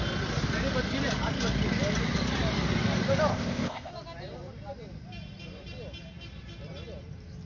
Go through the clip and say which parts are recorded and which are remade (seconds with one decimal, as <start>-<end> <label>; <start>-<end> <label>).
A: 0.0-3.3 recorded; 3.3-3.9 remade; 3.9-7.5 recorded

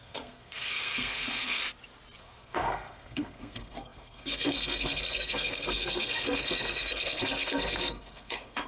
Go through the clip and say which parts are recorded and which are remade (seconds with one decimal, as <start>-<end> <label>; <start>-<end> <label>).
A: 0.0-1.6 remade; 1.6-2.2 recorded; 2.2-8.7 remade

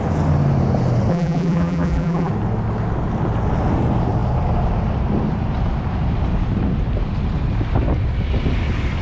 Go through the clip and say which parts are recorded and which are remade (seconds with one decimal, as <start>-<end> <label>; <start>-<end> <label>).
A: 0.0-1.1 recorded; 1.1-2.3 remade; 2.3-9.0 recorded

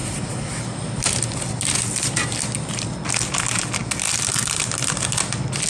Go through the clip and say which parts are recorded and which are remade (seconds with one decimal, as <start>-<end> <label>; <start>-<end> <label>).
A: 0.0-5.7 recorded

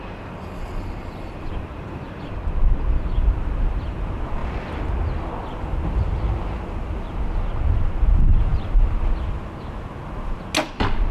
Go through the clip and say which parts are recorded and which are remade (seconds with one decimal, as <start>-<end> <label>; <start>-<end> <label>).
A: 0.0-1.0 recorded; 1.0-2.3 remade; 2.3-11.1 recorded